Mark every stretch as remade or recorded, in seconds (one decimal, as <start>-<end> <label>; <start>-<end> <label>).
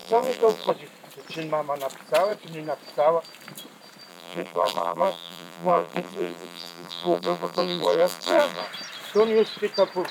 0.0-0.7 remade; 0.7-4.1 recorded; 4.1-8.6 remade; 8.6-10.1 recorded